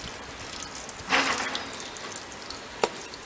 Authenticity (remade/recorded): recorded